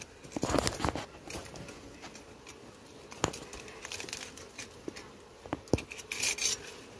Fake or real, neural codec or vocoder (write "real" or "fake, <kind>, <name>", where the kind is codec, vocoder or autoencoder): real